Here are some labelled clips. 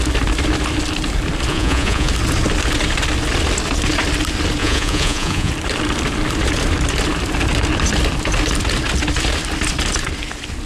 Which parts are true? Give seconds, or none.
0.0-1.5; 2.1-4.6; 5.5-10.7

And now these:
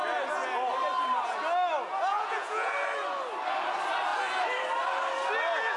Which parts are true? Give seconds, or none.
0.0-2.1; 2.7-5.8

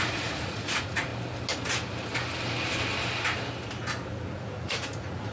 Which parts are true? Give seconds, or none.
1.1-4.3

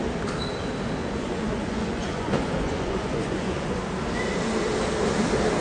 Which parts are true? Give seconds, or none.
0.0-1.0; 3.8-5.6